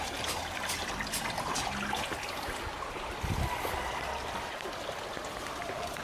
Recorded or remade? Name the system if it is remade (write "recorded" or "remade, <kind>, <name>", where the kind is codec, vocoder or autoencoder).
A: recorded